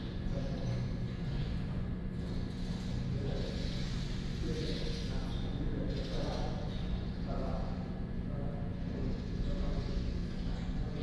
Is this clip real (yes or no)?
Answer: no